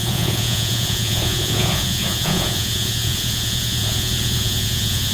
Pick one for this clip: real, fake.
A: fake